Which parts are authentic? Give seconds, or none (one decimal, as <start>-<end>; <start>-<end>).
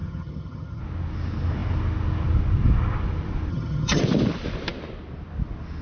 0.8-3.5; 4.0-5.8